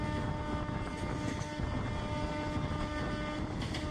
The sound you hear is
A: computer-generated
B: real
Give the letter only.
B